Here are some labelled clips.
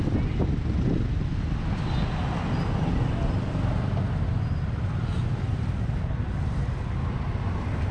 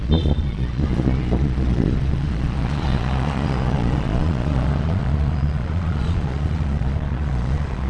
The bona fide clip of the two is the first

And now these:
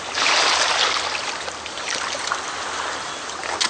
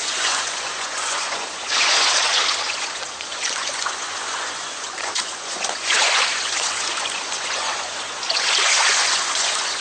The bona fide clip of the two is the first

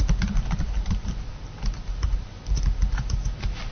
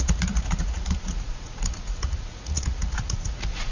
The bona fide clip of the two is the first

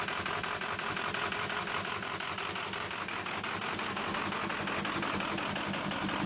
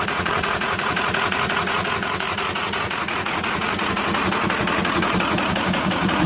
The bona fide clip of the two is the first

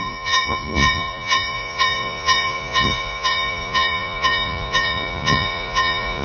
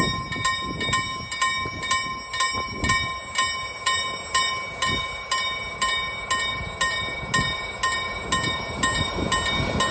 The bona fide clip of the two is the second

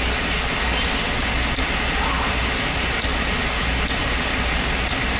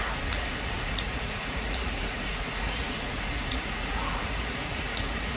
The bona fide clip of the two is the first